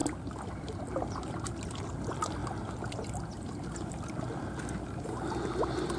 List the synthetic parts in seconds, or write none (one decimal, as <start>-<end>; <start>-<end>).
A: none